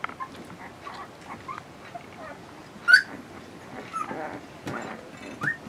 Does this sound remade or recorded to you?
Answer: recorded